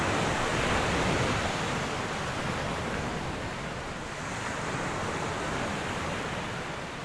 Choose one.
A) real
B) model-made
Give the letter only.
A